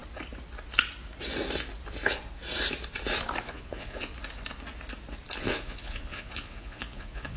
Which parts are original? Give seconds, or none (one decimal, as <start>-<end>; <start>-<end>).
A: 0.0-3.4; 4.1-5.4

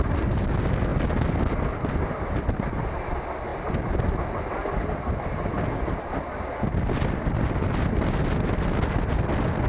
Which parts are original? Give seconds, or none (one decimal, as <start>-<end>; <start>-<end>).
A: 0.0-9.7

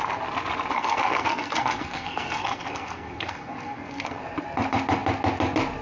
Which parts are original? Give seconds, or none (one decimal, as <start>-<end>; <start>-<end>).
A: 0.0-0.7; 4.2-5.8

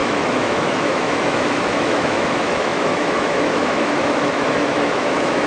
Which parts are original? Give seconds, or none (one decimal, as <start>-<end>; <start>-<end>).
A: none

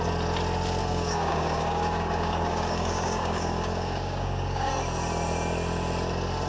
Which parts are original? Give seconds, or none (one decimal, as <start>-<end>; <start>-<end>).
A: 0.0-0.8; 4.7-6.5

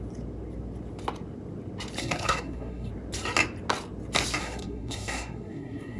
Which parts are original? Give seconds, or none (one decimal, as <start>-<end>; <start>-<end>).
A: 0.0-2.0; 2.9-4.4

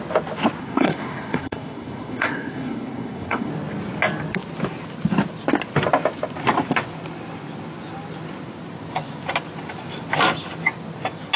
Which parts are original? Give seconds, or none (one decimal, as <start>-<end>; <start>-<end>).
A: 0.0-0.6; 3.5-11.4

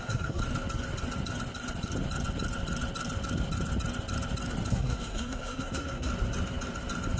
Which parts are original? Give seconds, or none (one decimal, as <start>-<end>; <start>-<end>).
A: 0.4-4.7; 6.1-7.2